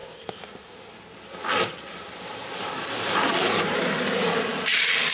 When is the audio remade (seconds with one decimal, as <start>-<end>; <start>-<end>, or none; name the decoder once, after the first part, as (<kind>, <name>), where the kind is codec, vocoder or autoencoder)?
none